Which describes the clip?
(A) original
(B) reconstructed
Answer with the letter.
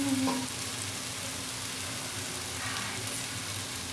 A